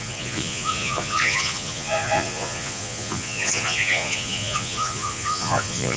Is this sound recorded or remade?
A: remade